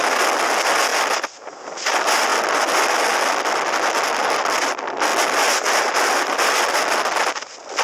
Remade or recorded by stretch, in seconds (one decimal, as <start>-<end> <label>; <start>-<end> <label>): 0.0-7.8 recorded